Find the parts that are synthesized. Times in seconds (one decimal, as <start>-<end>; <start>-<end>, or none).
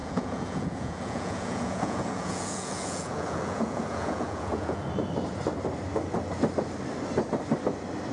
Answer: 0.0-4.9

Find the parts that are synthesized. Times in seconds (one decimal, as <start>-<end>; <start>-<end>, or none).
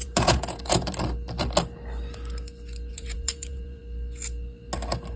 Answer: 0.0-0.9; 2.9-3.8